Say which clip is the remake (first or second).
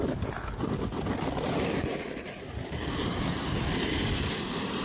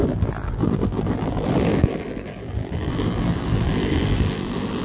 second